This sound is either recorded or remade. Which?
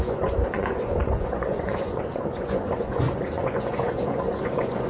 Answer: remade